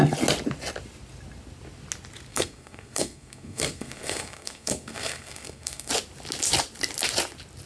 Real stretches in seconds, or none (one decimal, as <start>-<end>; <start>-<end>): 0.0-2.3; 5.9-7.7